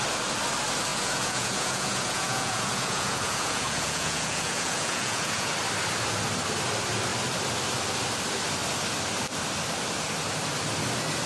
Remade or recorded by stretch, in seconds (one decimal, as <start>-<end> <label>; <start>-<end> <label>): 0.0-0.9 recorded; 0.9-5.5 remade; 5.5-11.3 recorded